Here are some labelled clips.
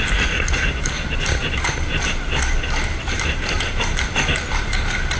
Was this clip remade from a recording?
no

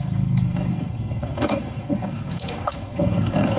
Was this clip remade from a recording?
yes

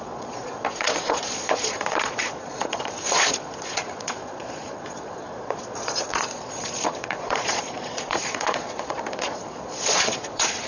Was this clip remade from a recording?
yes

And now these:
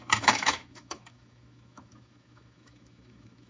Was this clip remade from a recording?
yes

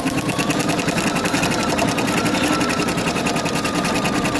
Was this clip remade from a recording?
no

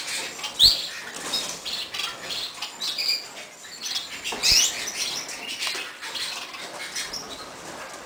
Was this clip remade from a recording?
no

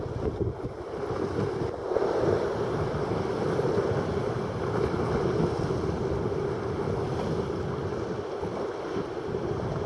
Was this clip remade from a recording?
no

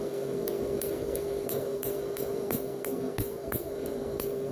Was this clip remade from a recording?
yes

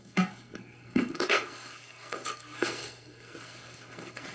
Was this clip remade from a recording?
yes